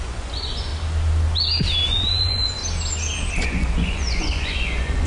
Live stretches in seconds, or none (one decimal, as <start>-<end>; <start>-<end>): 0.7-1.9; 2.6-3.3